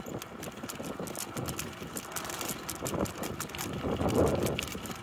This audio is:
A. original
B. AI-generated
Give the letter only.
A